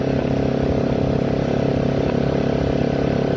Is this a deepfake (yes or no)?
no